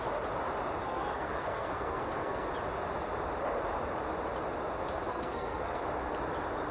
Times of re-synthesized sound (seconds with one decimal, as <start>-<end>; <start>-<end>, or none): 0.8-2.5; 5.1-5.8